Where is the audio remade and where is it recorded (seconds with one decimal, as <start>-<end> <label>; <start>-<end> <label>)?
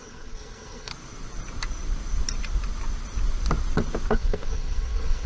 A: 0.0-0.9 remade; 0.9-4.1 recorded; 4.1-5.3 remade